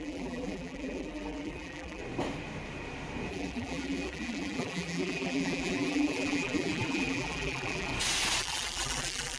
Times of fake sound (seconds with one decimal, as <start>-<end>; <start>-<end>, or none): 0.0-2.0; 3.3-7.9; 8.4-9.4